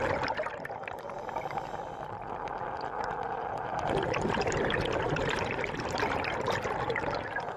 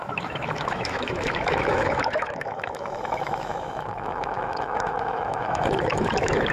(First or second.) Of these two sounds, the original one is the first